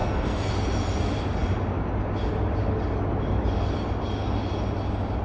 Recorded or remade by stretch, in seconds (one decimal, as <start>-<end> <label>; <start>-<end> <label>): 0.0-0.5 remade; 0.5-5.2 recorded